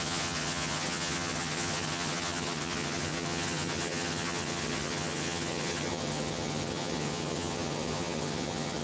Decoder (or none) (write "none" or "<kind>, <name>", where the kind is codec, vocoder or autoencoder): vocoder, HiFi-GAN